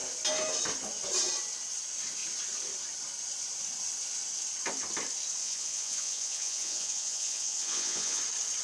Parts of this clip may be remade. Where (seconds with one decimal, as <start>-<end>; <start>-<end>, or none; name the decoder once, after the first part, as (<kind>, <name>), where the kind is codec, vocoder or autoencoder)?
5.4-8.2 (vocoder, Vocos)